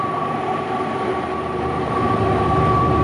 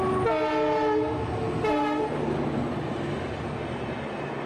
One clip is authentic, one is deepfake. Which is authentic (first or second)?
second